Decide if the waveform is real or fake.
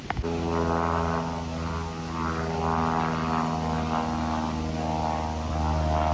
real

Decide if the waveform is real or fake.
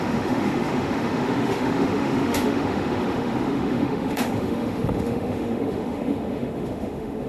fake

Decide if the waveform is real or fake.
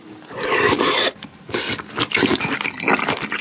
real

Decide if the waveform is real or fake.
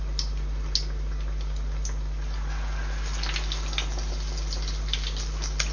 real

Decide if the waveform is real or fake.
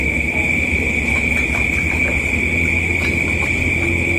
fake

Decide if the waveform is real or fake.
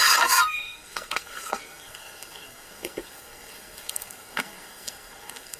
fake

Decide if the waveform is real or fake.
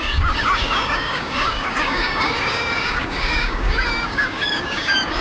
fake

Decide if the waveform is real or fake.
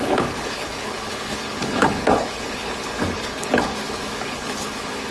fake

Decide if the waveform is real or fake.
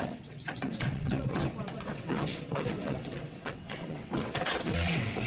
fake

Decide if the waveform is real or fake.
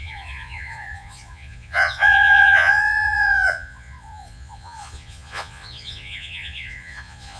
fake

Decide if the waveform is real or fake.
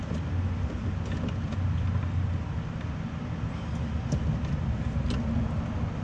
real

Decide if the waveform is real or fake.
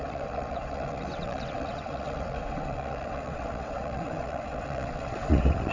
fake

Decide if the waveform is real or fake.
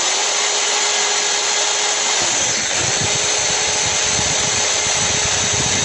real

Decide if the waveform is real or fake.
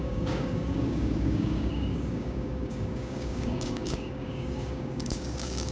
fake